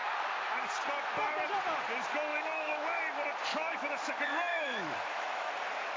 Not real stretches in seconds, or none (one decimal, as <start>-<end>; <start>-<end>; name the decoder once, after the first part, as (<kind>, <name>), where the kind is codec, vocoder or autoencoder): 2.3-3.0 (autoencoder, DAC-VAE); 3.5-4.1; 4.5-5.5